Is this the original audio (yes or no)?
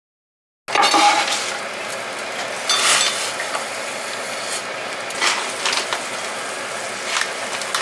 yes